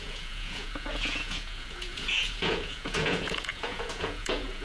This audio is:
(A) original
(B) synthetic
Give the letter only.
B